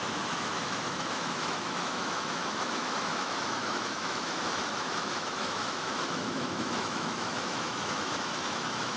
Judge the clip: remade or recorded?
remade